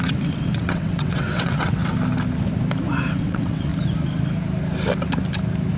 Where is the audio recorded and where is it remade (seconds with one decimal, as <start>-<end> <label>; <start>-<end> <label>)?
0.0-1.8 remade; 1.8-3.1 recorded; 3.1-3.7 remade; 3.7-5.8 recorded